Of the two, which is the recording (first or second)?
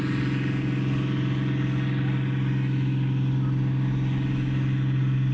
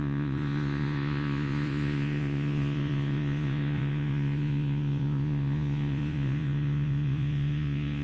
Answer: first